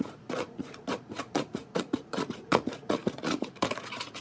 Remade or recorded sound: remade